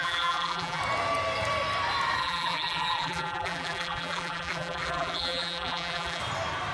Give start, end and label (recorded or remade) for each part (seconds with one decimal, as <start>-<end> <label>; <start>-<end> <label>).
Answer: 0.0-0.8 remade; 0.8-2.2 recorded; 2.2-6.2 remade; 6.2-6.7 recorded